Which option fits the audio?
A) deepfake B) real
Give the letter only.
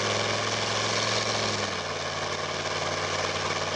B